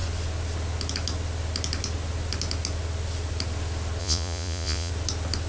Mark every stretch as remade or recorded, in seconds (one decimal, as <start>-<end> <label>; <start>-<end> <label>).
0.0-4.0 recorded; 4.0-4.9 remade; 4.9-5.5 recorded